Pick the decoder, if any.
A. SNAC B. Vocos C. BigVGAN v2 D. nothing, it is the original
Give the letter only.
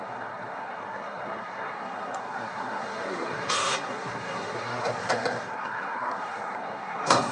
A